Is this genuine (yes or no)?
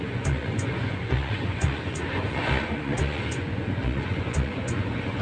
no